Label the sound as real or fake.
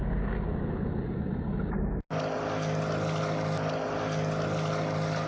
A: real